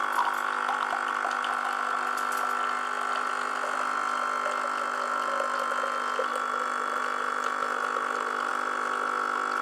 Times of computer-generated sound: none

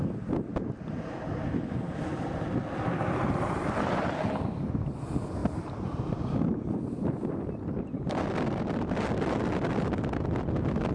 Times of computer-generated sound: 5.4-8.6 (vocoder, BigVGAN v2)